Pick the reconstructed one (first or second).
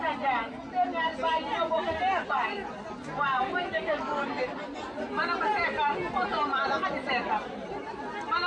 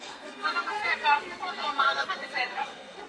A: second